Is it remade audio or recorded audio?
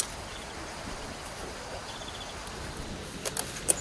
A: recorded